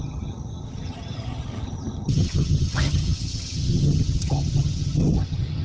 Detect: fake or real fake